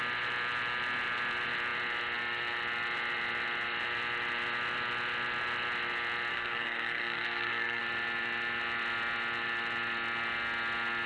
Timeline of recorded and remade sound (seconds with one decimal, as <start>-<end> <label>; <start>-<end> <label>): 0.0-6.3 recorded; 6.3-7.8 remade; 7.8-11.1 recorded